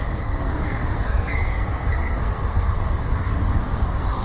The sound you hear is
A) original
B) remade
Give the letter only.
B